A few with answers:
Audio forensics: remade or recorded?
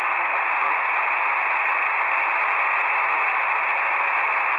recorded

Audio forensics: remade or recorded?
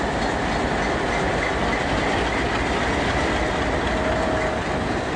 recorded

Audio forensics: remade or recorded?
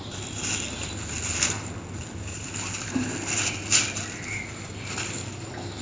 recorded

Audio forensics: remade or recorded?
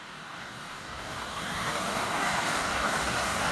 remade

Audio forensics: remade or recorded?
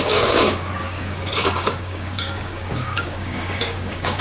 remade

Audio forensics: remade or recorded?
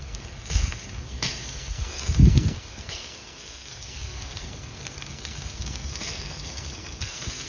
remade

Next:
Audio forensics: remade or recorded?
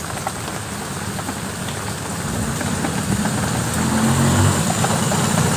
recorded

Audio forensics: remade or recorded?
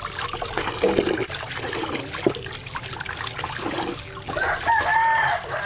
recorded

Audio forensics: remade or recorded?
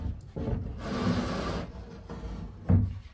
recorded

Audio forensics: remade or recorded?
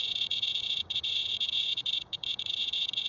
remade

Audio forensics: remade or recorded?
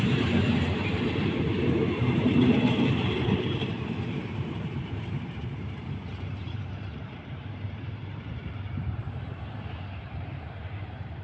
remade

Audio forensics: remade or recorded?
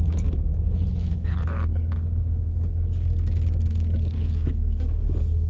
remade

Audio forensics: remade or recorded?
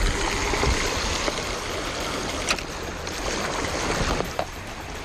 recorded